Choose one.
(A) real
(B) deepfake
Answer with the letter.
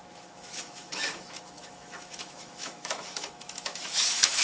B